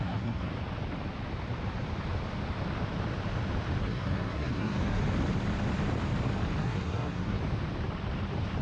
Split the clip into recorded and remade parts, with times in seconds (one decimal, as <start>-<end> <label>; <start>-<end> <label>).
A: 0.0-0.5 remade; 0.5-3.8 recorded; 3.8-5.0 remade; 5.0-6.6 recorded; 6.6-7.4 remade; 7.4-8.6 recorded